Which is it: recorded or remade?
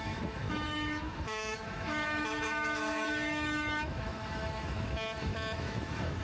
remade